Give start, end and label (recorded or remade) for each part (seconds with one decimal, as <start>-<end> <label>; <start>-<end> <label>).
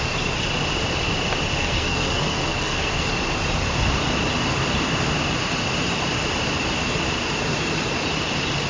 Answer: 0.0-1.6 recorded; 1.6-3.1 remade; 3.1-8.7 recorded